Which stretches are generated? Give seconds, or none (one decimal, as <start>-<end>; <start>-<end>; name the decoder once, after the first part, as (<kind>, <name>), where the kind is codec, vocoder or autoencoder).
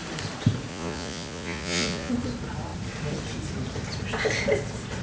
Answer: 0.7-2.1 (vocoder, Vocos)